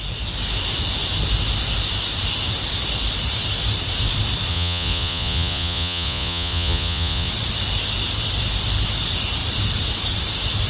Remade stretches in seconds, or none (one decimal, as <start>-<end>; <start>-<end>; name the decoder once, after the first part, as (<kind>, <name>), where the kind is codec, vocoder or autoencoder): 4.5-7.3 (vocoder, Vocos)